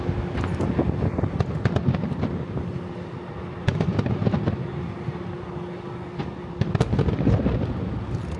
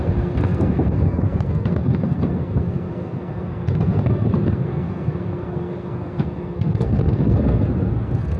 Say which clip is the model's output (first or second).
second